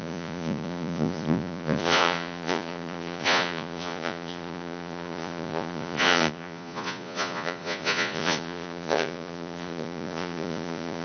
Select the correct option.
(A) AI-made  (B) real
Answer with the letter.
A